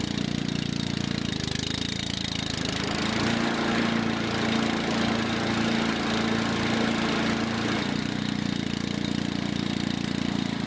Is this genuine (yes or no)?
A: yes